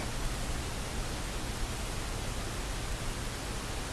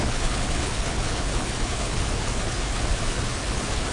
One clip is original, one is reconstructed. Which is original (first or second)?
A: first